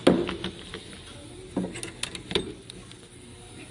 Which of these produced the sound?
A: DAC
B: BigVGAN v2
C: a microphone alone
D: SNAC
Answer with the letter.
C